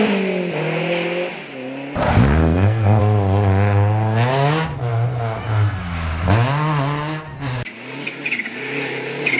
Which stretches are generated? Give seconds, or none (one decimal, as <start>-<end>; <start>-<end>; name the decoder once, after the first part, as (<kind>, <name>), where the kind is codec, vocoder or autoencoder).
2.4-3.0 (codec, SNAC)